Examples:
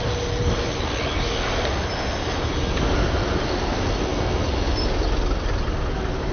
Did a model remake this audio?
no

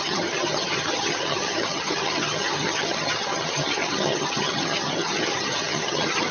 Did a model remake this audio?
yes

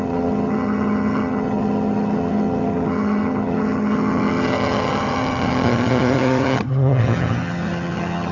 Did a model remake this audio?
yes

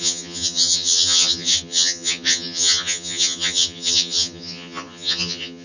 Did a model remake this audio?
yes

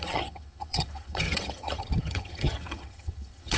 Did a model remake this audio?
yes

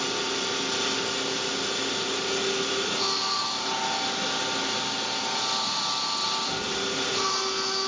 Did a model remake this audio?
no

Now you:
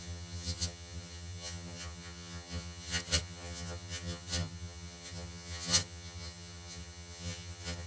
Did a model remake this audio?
yes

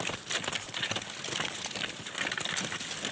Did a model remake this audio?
no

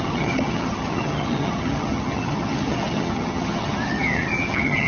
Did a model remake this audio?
yes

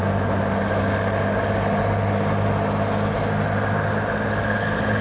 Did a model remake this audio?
no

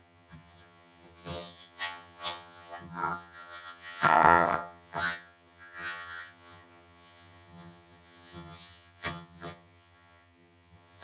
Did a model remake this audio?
yes